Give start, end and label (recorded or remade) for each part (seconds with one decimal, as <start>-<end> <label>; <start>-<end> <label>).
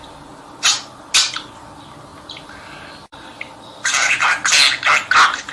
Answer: 0.0-2.1 recorded; 2.1-4.5 remade; 4.5-5.5 recorded